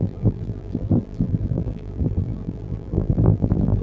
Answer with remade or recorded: remade